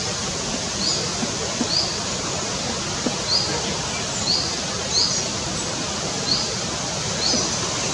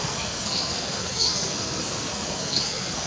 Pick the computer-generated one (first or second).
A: second